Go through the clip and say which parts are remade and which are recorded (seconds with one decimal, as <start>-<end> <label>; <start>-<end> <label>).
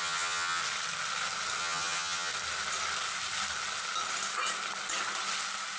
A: 0.0-0.6 remade; 0.6-1.6 recorded; 1.6-2.3 remade; 2.3-5.8 recorded